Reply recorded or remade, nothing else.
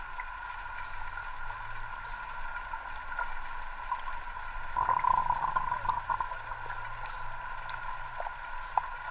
recorded